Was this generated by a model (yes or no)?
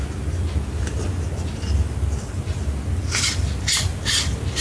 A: no